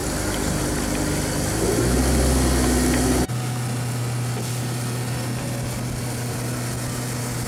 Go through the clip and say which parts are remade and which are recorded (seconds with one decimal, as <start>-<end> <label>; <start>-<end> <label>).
0.0-7.5 recorded